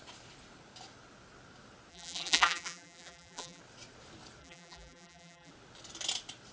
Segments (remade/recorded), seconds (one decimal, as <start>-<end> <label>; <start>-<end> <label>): 0.0-1.9 recorded; 1.9-3.6 remade; 3.6-4.4 recorded; 4.4-5.5 remade; 5.5-6.5 recorded

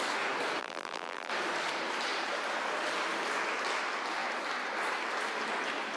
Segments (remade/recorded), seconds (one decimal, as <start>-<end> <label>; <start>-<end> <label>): 0.0-0.6 recorded; 0.6-1.3 remade; 1.3-6.0 recorded

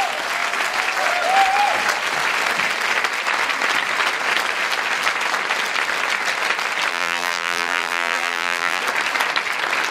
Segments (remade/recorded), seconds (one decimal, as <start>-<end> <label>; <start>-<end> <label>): 0.0-6.9 recorded; 6.9-8.8 remade; 8.8-9.9 recorded

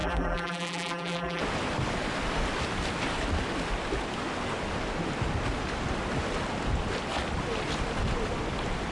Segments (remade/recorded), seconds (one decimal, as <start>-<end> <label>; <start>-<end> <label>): 0.0-1.4 remade; 1.4-8.9 recorded

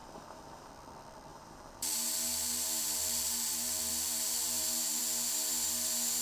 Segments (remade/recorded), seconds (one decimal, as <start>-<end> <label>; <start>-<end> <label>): 0.0-0.7 remade; 0.7-1.3 recorded; 1.3-5.0 remade; 5.0-6.2 recorded

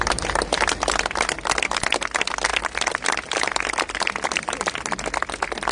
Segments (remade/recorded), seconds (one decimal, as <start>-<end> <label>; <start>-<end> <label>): 0.0-2.5 recorded; 2.5-4.7 remade; 4.7-5.7 recorded

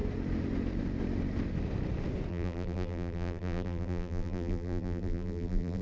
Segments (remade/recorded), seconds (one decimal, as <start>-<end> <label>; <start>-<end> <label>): 0.0-2.3 recorded; 2.3-5.8 remade